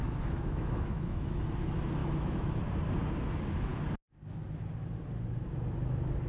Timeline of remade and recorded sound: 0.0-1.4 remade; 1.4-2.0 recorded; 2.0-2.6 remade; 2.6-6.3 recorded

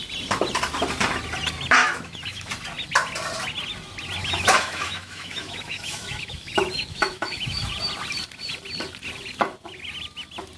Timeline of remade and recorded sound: 0.0-1.8 recorded; 1.8-2.5 remade; 2.5-4.2 recorded; 4.2-7.7 remade; 7.7-10.6 recorded

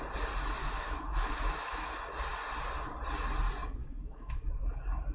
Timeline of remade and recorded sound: 0.0-0.6 recorded; 0.6-1.9 remade; 1.9-3.8 recorded; 3.8-4.5 remade; 4.5-5.1 recorded

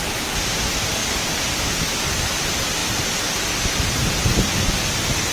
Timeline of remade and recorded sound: 0.0-5.3 recorded